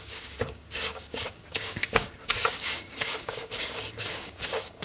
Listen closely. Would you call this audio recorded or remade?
remade